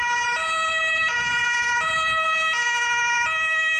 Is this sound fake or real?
real